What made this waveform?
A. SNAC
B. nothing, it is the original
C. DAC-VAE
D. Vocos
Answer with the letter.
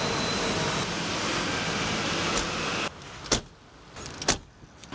B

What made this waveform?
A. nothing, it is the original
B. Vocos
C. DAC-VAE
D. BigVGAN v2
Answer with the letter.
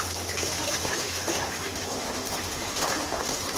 C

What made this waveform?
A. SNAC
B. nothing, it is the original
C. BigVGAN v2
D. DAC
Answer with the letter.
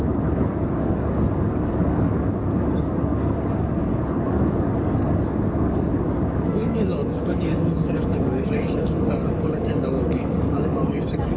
D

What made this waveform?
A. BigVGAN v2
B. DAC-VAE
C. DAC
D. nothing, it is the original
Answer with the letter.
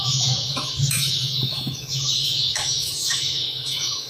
B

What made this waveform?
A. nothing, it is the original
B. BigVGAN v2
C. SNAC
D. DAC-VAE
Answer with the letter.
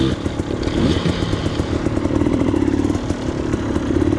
A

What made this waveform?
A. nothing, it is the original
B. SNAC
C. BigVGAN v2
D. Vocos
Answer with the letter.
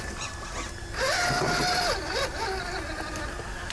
A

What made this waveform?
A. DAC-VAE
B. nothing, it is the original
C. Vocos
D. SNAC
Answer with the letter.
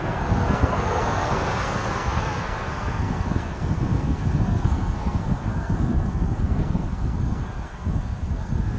D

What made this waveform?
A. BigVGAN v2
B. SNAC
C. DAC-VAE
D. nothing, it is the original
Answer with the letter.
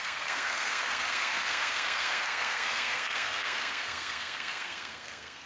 B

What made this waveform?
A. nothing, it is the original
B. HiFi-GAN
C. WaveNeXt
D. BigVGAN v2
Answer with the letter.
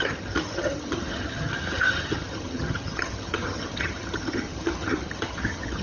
B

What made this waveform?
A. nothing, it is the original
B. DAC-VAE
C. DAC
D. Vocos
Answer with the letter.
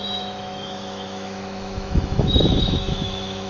B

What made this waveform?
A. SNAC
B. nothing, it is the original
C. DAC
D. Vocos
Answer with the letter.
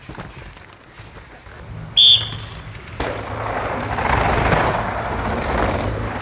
B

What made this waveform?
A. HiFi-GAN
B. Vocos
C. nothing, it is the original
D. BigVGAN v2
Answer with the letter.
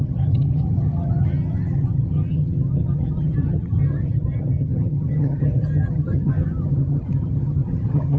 A